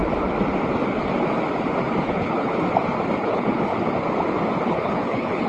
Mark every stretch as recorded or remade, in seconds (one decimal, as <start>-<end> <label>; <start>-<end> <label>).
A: 0.0-2.0 recorded; 2.0-2.5 remade; 2.5-3.2 recorded; 3.2-3.7 remade; 3.7-4.6 recorded; 4.6-5.5 remade